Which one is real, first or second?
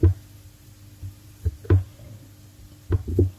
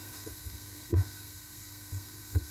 first